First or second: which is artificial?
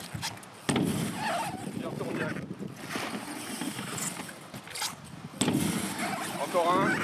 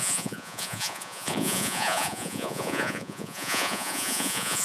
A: second